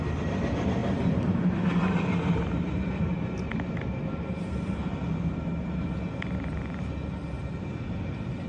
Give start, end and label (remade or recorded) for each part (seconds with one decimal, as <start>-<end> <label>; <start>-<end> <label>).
0.0-0.8 recorded; 0.8-2.9 remade; 2.9-8.5 recorded